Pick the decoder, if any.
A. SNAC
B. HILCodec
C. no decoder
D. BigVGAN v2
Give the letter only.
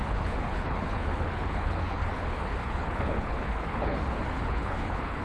B